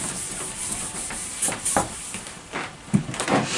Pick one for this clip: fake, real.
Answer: real